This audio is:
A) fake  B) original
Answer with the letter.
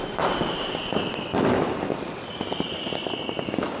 B